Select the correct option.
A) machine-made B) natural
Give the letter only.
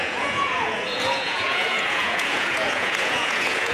A